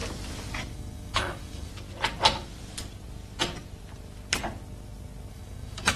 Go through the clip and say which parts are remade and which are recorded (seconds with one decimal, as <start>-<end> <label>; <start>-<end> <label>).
0.0-0.7 recorded; 0.7-1.7 remade; 1.7-5.3 recorded; 5.3-6.0 remade